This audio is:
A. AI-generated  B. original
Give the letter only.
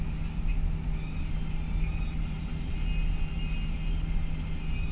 B